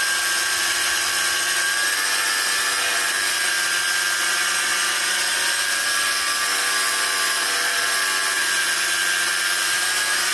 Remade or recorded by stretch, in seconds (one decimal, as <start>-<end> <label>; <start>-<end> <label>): 0.0-10.3 recorded